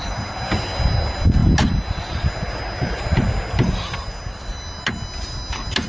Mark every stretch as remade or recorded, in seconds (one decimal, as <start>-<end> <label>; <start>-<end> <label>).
0.0-5.9 recorded